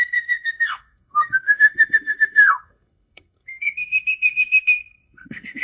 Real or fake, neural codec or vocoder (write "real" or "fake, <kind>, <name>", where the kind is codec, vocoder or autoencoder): fake, codec, SNAC